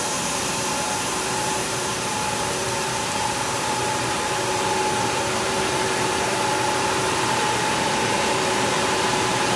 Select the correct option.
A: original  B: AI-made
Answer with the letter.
B